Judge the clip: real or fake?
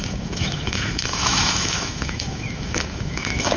fake